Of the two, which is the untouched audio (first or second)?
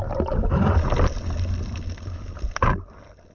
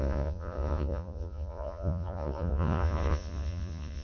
first